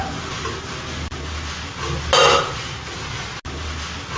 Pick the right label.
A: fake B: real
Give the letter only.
B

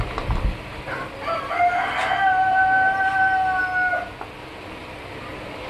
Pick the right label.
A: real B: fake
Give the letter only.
A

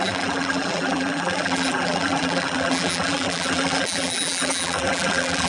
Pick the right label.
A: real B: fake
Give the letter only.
B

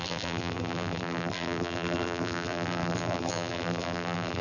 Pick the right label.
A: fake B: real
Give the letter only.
A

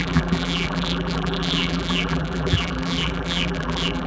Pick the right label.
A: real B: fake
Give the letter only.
B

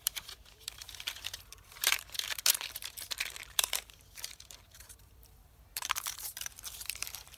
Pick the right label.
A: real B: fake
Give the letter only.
B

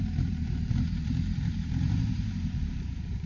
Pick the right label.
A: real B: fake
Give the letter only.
B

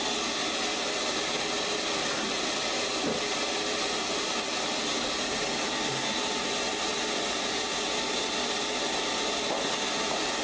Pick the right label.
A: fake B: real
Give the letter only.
B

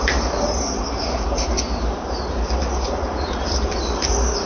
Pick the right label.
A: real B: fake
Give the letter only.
B